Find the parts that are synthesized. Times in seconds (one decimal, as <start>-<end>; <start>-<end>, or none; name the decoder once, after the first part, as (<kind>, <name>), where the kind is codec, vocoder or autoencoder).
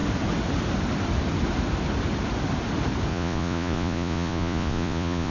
3.1-5.3 (vocoder, Vocos)